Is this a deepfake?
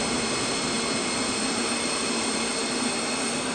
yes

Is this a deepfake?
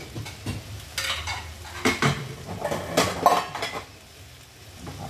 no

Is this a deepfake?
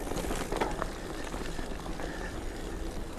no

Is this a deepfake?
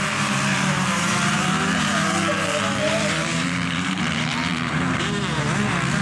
yes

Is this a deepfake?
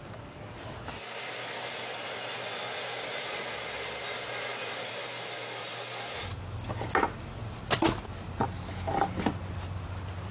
no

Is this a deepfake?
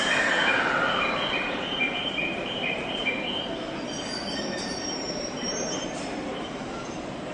yes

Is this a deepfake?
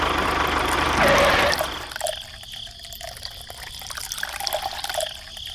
no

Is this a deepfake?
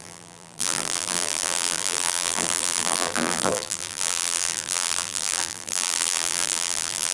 yes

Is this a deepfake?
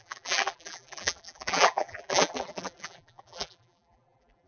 yes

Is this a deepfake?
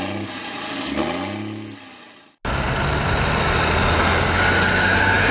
no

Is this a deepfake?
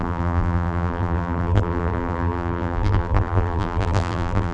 yes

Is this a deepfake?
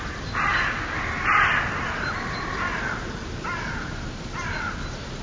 no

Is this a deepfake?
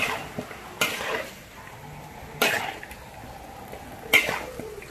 no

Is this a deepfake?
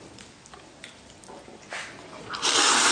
yes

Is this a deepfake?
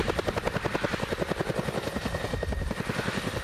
yes